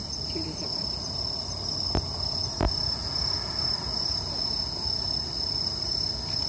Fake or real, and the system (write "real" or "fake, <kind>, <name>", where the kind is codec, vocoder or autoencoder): real